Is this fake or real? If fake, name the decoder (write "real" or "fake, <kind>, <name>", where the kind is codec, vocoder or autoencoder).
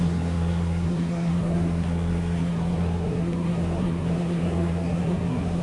fake, codec, SNAC